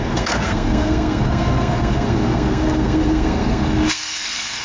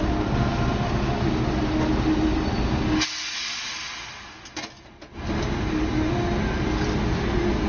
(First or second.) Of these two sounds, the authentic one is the second